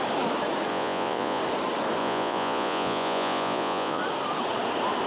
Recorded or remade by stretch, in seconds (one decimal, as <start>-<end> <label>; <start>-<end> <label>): 0.0-0.7 recorded; 0.7-1.4 remade; 1.4-2.0 recorded; 2.0-4.0 remade; 4.0-5.1 recorded